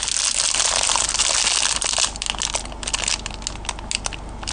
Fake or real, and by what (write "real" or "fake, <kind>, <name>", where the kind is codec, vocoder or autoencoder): real